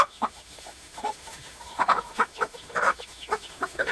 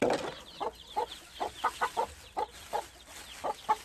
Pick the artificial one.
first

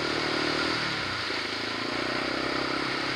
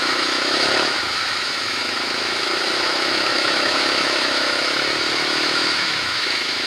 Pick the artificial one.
second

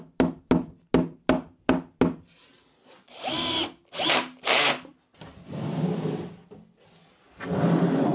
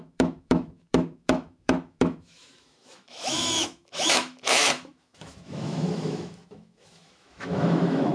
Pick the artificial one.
second